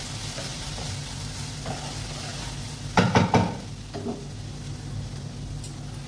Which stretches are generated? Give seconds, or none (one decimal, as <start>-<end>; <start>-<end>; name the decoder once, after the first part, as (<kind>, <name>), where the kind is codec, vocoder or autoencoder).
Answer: 0.5-1.7 (vocoder, BigVGAN v2)